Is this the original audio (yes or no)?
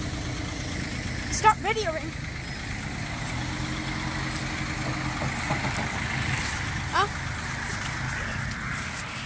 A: yes